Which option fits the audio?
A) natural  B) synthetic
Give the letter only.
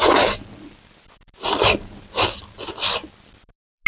A